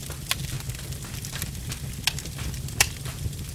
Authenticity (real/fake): real